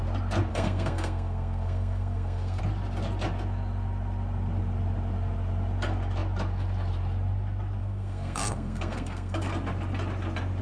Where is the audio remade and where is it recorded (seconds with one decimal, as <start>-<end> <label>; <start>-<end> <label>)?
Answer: 0.0-0.5 recorded; 0.5-2.6 remade; 2.6-7.8 recorded; 7.8-9.5 remade; 9.5-10.6 recorded